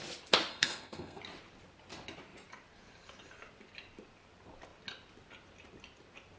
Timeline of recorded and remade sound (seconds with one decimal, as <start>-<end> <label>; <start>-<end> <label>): 0.0-0.5 recorded; 0.5-1.2 remade; 1.2-6.4 recorded